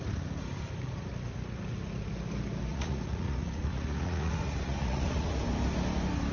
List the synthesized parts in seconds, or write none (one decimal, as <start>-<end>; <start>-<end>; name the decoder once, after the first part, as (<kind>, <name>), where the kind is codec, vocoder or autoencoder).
2.7-5.3 (vocoder, Vocos)